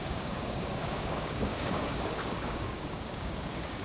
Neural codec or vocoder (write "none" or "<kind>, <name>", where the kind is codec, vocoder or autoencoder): codec, DAC